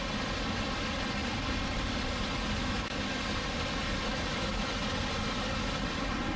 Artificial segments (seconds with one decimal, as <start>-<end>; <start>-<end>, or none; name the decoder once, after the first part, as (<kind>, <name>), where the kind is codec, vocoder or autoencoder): 2.6-3.2 (autoencoder, DAC-VAE); 4.1-4.7